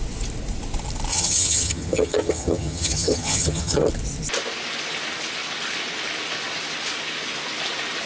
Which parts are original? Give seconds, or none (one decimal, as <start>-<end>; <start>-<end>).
0.0-1.1; 3.9-8.1